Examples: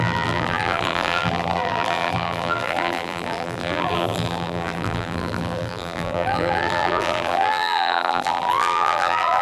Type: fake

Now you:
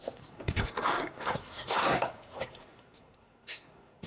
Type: fake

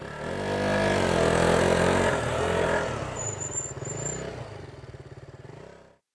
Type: real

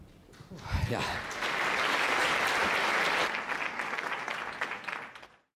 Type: real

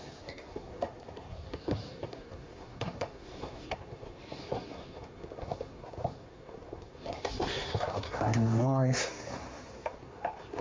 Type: fake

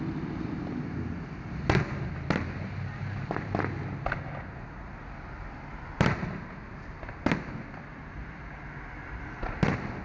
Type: real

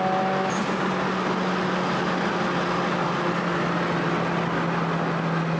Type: real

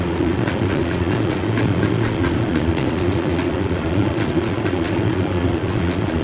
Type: fake